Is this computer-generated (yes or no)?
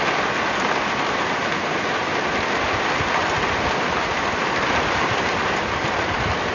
no